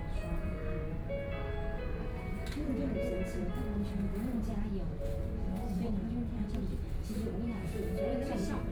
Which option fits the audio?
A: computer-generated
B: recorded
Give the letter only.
A